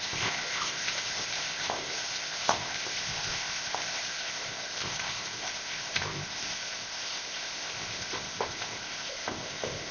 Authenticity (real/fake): fake